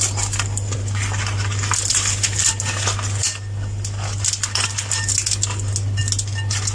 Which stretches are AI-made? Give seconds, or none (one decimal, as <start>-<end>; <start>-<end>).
1.9-2.5